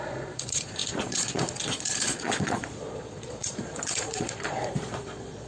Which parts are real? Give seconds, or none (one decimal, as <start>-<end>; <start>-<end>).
none